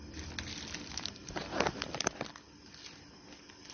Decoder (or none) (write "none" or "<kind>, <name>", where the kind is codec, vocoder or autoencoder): none